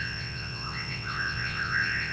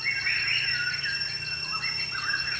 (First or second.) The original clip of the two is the second